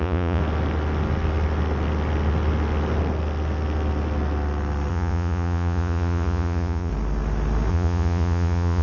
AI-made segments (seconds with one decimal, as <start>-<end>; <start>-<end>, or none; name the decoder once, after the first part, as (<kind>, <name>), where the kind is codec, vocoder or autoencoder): 0.0-0.4 (vocoder, Vocos); 4.9-6.9; 7.7-8.8